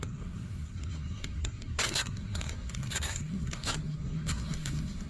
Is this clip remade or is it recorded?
remade